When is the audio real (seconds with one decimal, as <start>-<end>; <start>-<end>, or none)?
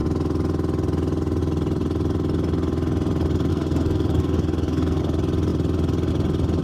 0.0-3.5; 5.0-6.6